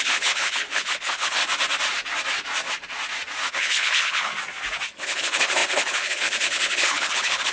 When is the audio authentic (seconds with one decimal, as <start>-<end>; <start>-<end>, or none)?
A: 1.4-3.5; 4.3-5.0